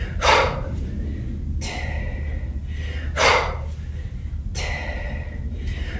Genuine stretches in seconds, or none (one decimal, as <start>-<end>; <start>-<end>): 1.1-2.0; 2.6-5.5